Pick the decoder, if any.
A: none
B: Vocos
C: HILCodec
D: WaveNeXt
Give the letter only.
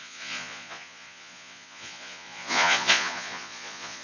B